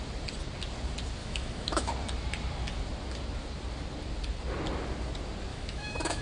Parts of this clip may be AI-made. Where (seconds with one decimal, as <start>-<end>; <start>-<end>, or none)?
1.2-1.9; 5.5-6.2